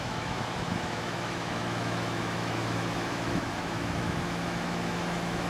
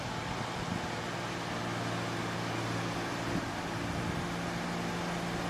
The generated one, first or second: first